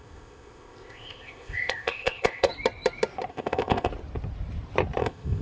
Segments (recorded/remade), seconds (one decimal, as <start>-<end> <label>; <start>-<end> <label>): 0.0-2.5 remade; 2.5-3.3 recorded; 3.3-3.9 remade; 3.9-5.0 recorded; 5.0-5.4 remade